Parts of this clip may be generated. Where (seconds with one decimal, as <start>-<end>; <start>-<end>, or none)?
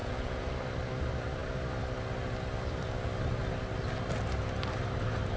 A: 0.0-0.5